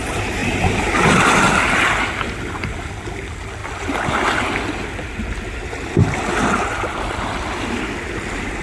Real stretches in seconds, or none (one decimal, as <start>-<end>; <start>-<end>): 0.0-8.6